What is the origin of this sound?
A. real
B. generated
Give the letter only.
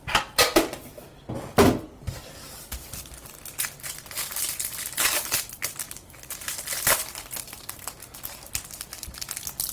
A